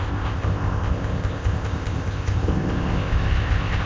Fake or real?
fake